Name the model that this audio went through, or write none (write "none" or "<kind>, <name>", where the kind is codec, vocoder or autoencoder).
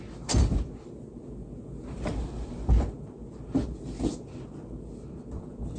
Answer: none